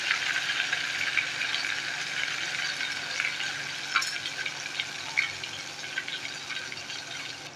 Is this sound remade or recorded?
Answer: recorded